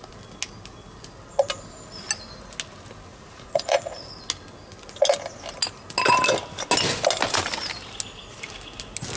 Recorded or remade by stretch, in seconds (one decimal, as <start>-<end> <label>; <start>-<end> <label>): 0.0-3.1 recorded; 3.1-4.1 remade; 4.1-9.2 recorded